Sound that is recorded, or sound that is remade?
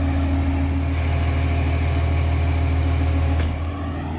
recorded